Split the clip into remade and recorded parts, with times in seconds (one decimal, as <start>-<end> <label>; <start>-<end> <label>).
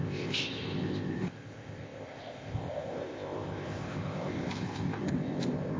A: 0.0-5.8 remade